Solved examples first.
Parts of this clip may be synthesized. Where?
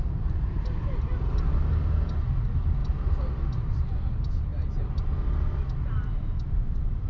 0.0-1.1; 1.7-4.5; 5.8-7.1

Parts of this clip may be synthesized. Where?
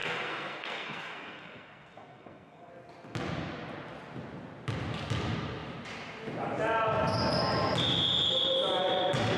0.0-2.7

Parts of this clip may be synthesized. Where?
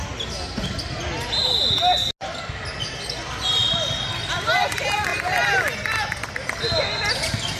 none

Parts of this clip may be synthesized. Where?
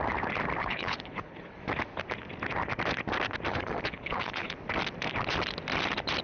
0.6-1.6; 3.5-4.5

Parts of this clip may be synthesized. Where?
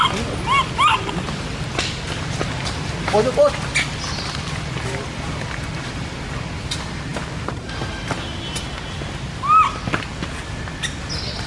none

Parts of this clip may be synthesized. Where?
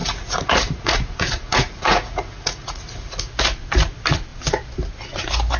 0.0-3.3